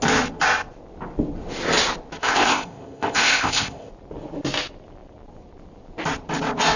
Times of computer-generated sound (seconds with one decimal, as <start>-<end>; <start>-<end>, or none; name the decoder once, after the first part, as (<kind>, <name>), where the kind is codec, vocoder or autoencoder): 2.2-3.9 (codec, ZipCodec)